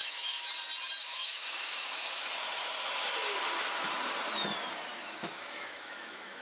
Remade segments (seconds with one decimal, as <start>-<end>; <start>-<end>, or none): 0.0-0.5; 1.0-2.3; 4.9-6.4